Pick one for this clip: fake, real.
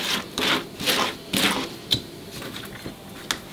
real